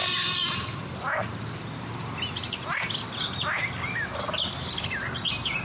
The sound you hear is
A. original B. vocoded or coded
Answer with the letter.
A